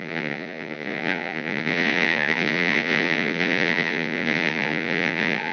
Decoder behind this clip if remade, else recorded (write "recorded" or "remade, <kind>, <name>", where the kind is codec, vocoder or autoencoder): remade, vocoder, Vocos